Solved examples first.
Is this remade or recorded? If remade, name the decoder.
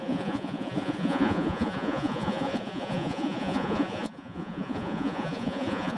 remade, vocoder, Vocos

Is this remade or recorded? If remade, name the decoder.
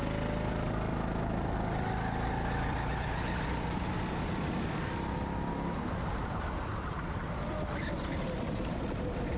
recorded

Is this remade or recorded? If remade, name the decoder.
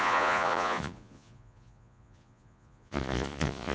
remade, vocoder, Vocos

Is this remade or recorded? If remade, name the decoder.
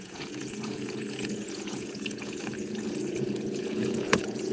remade, vocoder, Vocos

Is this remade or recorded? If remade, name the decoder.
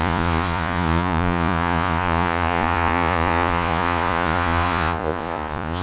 remade, vocoder, Vocos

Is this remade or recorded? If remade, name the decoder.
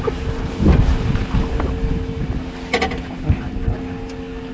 recorded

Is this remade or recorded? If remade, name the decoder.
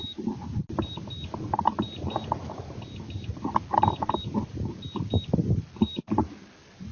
recorded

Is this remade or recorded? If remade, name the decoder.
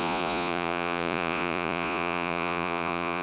remade, vocoder, Vocos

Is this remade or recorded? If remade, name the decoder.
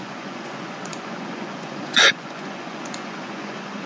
remade, vocoder, Vocos